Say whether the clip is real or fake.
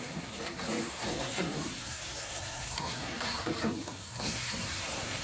fake